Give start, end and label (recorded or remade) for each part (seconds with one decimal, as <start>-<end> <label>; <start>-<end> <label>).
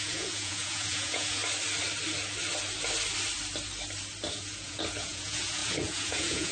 0.0-1.4 remade; 1.4-4.3 recorded; 4.3-6.5 remade